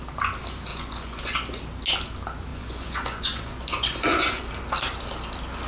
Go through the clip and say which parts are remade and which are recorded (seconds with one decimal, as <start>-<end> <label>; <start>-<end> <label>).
0.0-0.7 recorded; 0.7-1.6 remade; 1.6-2.5 recorded; 2.5-4.4 remade; 4.4-5.7 recorded